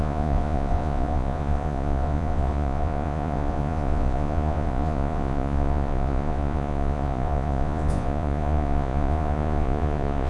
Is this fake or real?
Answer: fake